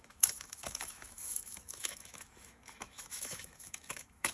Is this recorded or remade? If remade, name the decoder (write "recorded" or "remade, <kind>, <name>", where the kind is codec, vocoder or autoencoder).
remade, autoencoder, DAC-VAE